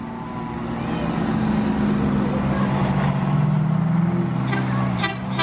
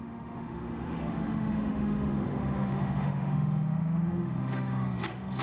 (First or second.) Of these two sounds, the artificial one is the second